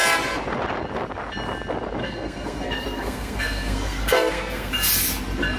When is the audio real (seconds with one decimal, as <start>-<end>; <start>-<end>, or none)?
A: 0.0-2.0; 4.7-5.6